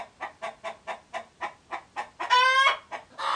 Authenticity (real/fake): real